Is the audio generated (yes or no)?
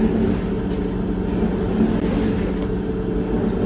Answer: no